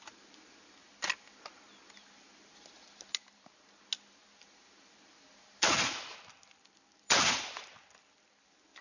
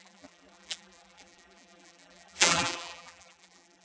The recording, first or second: first